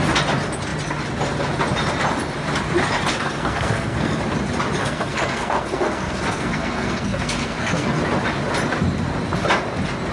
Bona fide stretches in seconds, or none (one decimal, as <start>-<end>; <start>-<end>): 0.0-3.1; 4.2-4.8; 8.0-10.1